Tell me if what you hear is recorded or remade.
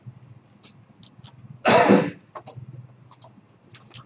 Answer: recorded